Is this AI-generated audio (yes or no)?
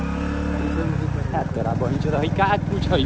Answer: no